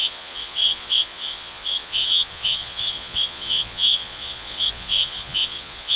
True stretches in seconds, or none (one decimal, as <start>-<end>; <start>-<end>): none